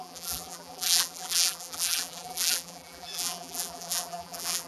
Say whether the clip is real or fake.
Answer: fake